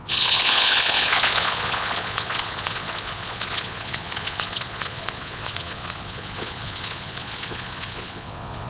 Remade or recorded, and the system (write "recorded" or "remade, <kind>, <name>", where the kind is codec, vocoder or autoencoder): remade, vocoder, Vocos